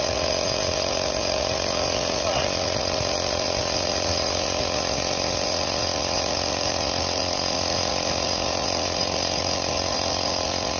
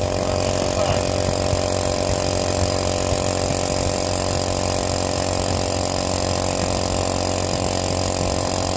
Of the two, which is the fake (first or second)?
first